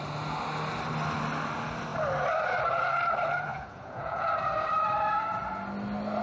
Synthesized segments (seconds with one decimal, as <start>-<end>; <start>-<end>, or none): 3.5-4.3